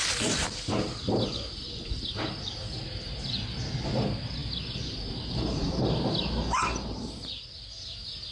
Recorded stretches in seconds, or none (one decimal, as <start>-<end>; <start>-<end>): 0.0-8.3